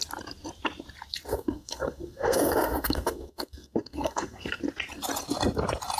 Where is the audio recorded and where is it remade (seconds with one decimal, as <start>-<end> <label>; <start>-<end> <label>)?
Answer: 0.0-1.3 recorded; 1.3-4.6 remade; 4.6-6.0 recorded